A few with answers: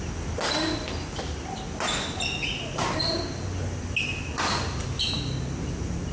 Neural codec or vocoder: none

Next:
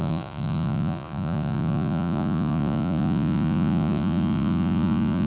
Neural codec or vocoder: vocoder, Vocos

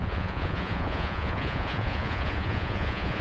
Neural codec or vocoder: vocoder, Vocos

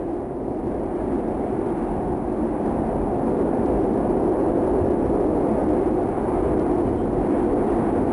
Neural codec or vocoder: none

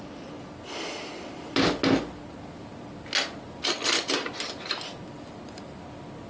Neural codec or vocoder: none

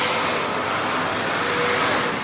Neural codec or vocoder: none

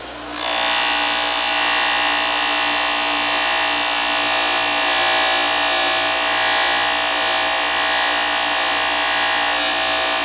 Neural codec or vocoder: none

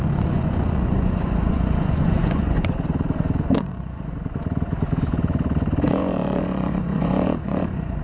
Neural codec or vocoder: vocoder, Vocos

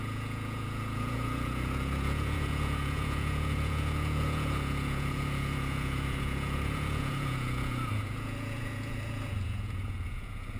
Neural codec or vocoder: vocoder, Vocos